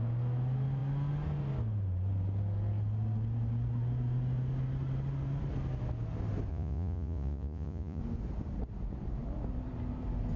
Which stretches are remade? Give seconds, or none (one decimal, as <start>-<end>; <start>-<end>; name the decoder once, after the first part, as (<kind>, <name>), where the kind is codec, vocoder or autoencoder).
6.5-8.0 (vocoder, Vocos)